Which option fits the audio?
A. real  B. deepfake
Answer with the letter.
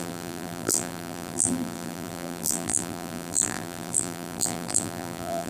B